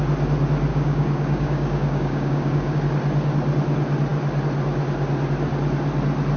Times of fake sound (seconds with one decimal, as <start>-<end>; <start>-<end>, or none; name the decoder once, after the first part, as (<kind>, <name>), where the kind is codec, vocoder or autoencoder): 0.7-2.8 (codec, DAC)